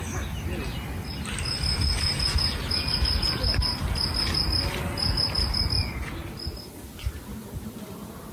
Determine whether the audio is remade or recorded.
recorded